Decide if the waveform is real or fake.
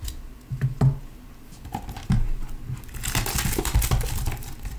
real